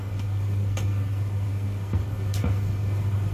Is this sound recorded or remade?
remade